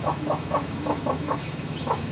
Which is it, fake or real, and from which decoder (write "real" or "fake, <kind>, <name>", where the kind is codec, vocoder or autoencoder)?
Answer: fake, autoencoder, DAC-VAE